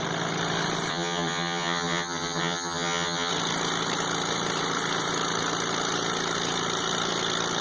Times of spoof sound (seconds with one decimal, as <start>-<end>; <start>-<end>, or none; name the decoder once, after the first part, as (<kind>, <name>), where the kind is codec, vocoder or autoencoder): 0.9-3.3 (vocoder, HiFi-GAN)